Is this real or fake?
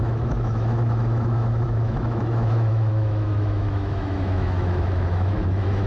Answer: fake